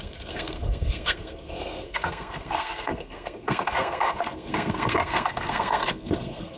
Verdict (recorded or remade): remade